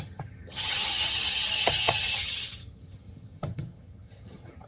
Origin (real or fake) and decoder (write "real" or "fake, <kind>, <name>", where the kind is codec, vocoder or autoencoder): fake, vocoder, HiFi-GAN